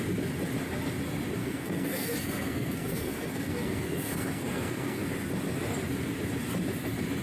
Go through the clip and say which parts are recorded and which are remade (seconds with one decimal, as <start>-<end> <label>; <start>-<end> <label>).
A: 0.0-1.4 recorded; 1.4-5.1 remade; 5.1-7.2 recorded